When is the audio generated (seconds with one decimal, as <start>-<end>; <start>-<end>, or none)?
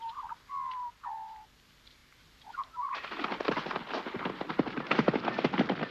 2.0-2.7